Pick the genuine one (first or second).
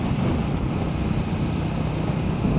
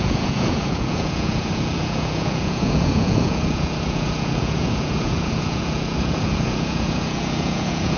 first